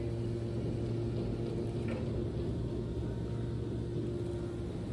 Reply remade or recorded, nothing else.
recorded